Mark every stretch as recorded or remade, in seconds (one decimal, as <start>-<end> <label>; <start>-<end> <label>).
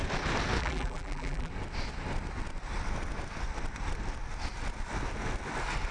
0.0-0.6 recorded; 0.6-1.5 remade; 1.5-5.9 recorded